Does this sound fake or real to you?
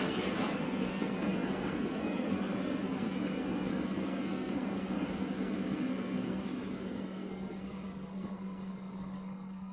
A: fake